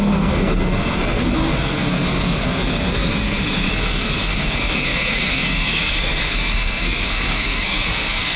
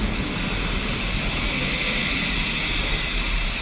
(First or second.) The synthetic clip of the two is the first